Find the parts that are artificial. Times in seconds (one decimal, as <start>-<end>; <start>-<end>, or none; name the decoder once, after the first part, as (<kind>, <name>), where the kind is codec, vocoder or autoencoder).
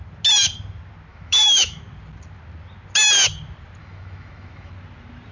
1.1-1.8 (autoencoder, DAC-VAE); 3.8-4.7